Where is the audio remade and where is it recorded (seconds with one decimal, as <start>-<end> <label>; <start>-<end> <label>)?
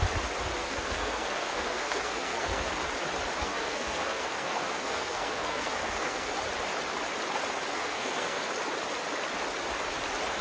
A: 0.0-0.6 recorded; 0.6-2.7 remade; 2.7-3.4 recorded; 3.4-6.3 remade; 6.3-7.7 recorded; 7.7-8.5 remade; 8.5-10.4 recorded